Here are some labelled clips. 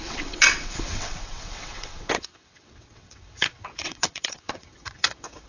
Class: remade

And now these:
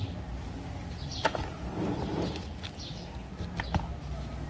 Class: recorded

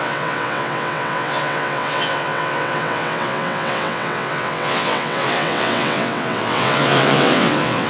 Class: remade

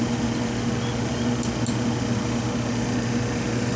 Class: recorded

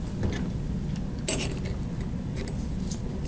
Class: recorded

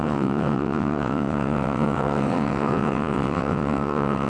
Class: remade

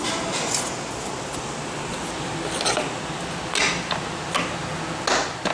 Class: recorded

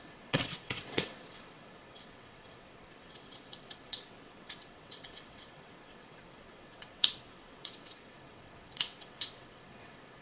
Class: remade